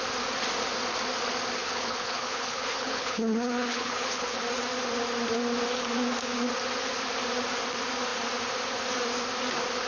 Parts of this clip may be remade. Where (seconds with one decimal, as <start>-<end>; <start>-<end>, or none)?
1.6-4.4